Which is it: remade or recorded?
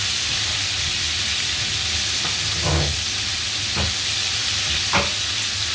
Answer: recorded